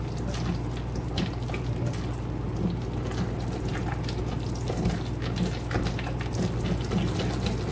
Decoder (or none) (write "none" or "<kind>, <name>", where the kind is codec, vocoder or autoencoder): none